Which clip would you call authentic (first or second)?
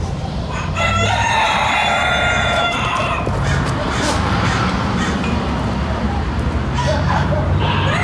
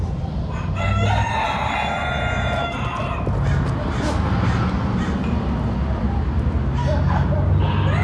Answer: second